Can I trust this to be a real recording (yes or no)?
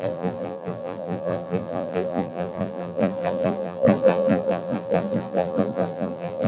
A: no